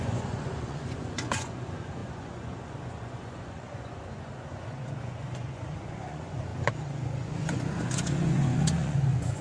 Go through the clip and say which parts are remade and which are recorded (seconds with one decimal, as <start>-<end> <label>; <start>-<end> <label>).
0.0-9.4 remade

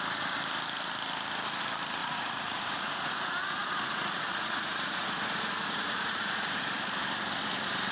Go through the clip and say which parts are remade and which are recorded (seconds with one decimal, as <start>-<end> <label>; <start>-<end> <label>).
0.0-2.0 recorded; 2.0-6.6 remade; 6.6-7.9 recorded

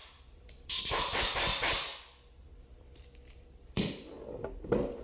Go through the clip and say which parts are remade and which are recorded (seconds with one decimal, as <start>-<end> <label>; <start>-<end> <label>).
0.0-1.5 remade; 1.5-2.6 recorded; 2.6-5.0 remade

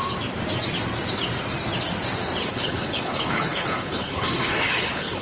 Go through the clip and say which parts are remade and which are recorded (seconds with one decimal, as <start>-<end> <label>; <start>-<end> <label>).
0.0-2.4 recorded; 2.4-5.2 remade